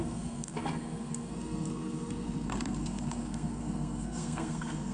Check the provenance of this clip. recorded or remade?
remade